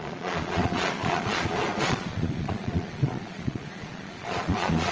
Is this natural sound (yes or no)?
no